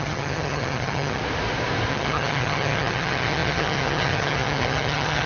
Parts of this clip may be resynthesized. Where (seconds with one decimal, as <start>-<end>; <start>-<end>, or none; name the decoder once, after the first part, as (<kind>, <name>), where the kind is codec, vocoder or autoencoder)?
0.0-1.2 (vocoder, HiFi-GAN); 1.9-5.3